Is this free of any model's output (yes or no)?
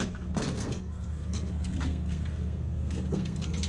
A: no